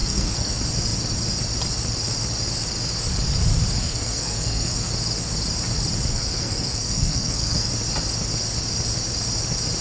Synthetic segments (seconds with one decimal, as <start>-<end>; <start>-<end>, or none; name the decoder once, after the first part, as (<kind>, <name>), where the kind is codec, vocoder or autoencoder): 0.0-0.5 (codec, SNAC); 3.8-4.9; 6.1-7.7